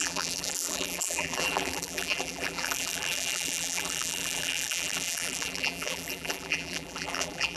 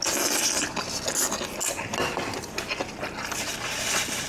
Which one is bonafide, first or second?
second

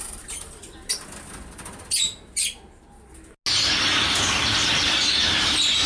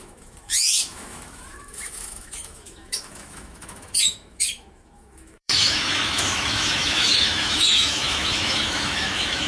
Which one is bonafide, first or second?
first